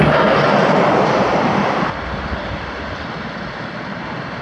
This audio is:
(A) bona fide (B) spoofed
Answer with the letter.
A